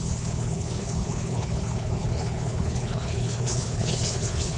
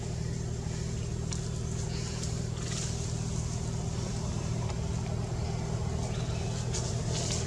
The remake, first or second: first